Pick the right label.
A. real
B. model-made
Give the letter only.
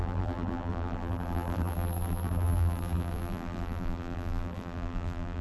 B